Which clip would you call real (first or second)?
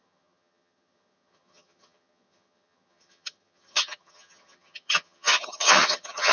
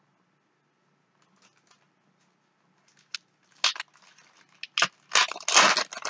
second